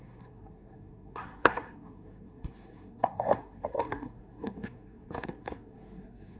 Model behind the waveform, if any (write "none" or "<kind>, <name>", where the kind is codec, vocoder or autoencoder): codec, SNAC